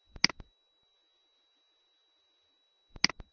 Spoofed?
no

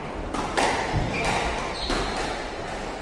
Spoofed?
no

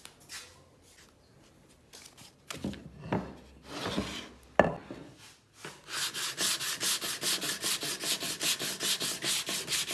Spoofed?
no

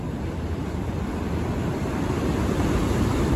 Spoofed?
yes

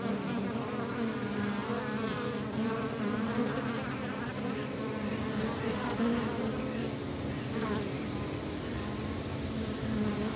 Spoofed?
no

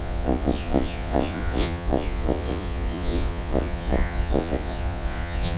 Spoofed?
yes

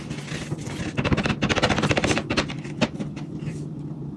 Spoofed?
no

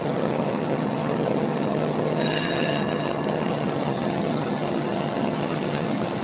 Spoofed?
yes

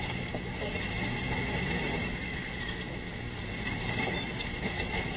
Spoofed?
yes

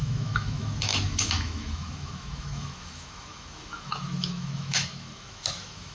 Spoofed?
yes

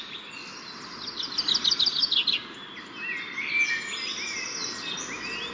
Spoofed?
no